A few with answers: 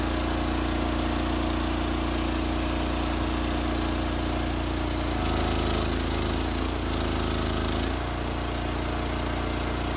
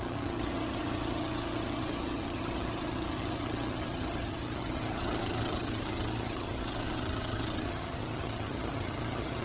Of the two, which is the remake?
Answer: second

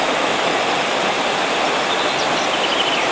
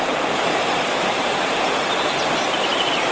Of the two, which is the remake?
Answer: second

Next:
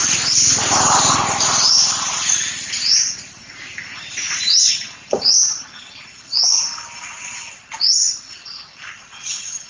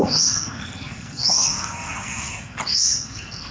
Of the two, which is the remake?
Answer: second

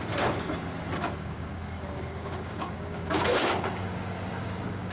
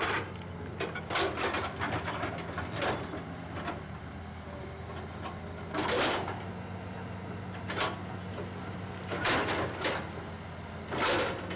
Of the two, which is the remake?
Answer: first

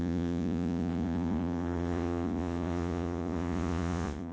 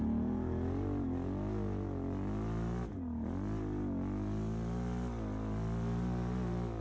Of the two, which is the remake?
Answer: first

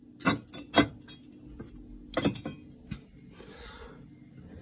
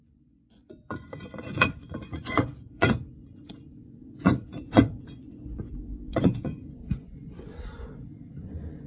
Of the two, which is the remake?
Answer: second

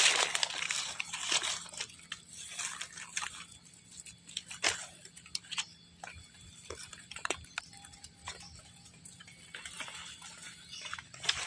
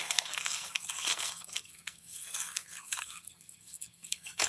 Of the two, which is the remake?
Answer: second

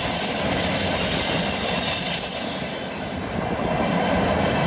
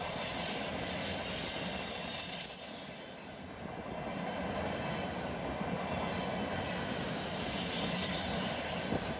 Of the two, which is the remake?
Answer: first